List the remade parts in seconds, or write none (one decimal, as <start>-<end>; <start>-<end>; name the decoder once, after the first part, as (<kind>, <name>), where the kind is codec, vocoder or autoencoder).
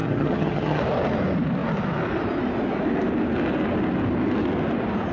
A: 0.0-0.8 (vocoder, HiFi-GAN)